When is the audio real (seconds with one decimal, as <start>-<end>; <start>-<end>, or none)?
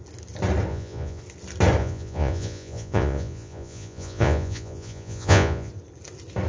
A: 0.0-0.7; 1.2-1.8; 5.7-6.5